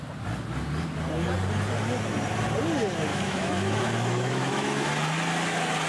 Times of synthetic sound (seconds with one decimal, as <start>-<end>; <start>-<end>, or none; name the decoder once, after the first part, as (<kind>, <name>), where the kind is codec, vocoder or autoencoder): 3.1-4.9 (autoencoder, DAC-VAE)